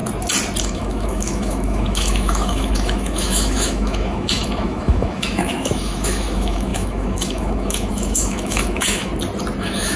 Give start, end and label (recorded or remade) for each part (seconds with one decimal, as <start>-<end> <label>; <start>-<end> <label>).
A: 0.0-0.6 recorded; 0.6-9.1 remade; 9.1-9.6 recorded; 9.6-10.0 remade